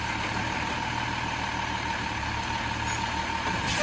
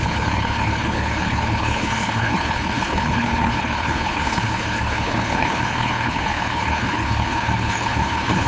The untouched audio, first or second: first